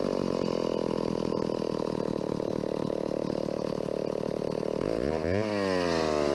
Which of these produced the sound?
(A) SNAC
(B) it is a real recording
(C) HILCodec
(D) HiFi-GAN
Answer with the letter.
B